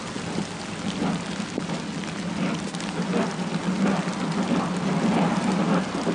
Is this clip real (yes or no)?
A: yes